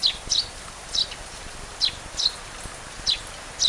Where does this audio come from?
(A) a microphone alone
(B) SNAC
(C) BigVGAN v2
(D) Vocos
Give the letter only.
A